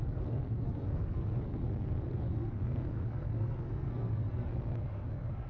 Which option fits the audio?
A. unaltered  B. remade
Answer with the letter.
B